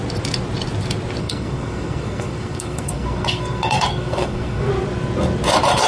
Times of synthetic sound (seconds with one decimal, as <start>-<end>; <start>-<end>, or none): 1.2-4.7